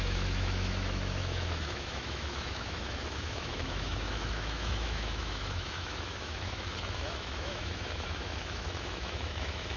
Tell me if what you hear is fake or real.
fake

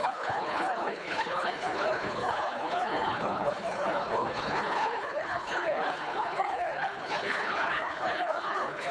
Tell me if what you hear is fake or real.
fake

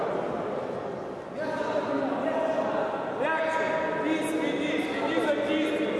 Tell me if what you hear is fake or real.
real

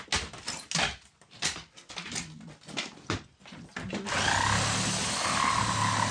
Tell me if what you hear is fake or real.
real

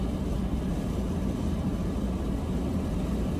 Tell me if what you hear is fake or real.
real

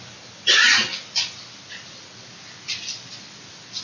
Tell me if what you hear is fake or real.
real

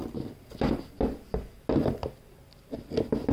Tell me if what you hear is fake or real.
real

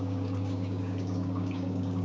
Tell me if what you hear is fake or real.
fake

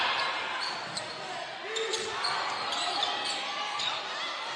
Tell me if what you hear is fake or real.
real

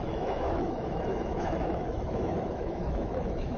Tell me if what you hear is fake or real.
fake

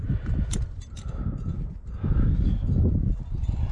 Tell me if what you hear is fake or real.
real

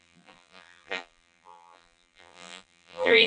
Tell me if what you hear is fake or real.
fake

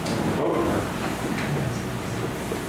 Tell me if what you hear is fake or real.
real